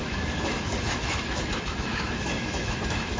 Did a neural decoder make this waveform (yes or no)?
yes